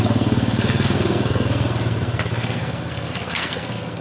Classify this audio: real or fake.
fake